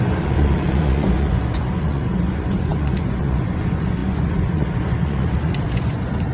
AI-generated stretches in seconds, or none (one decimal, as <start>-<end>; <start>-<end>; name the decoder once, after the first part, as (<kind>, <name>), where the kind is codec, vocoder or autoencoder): 0.0-6.3 (vocoder, Vocos)